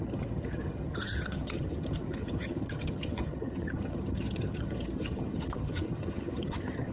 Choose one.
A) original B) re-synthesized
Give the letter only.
B